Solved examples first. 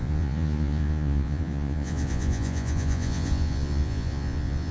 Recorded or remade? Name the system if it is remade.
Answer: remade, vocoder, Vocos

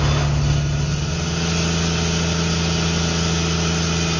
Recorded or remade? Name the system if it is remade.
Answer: recorded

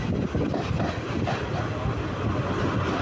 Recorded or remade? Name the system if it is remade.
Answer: recorded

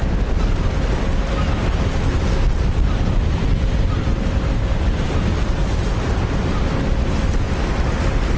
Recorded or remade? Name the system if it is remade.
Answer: recorded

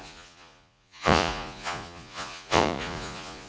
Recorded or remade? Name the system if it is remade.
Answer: remade, vocoder, Vocos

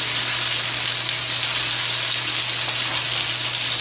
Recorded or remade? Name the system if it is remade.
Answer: recorded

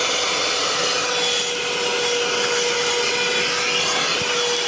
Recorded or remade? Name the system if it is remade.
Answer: recorded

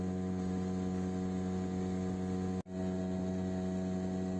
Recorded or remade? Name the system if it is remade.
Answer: recorded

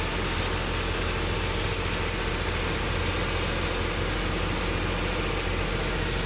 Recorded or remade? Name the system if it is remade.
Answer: recorded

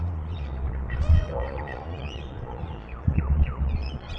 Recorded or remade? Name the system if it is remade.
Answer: remade, vocoder, Vocos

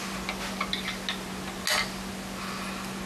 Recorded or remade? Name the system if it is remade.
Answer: recorded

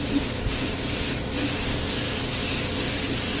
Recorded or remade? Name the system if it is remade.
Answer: recorded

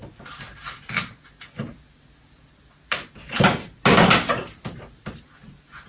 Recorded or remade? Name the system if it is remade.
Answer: recorded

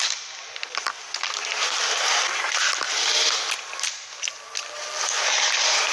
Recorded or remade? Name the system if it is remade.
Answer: recorded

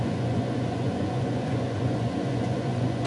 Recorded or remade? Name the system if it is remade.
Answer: remade, vocoder, Vocos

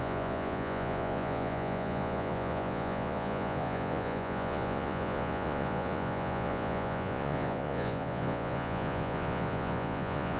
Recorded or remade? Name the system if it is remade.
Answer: remade, vocoder, Vocos